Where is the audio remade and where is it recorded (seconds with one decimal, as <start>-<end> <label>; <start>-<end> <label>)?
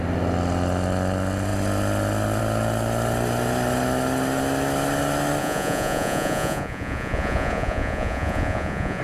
0.0-5.4 recorded; 5.4-9.0 remade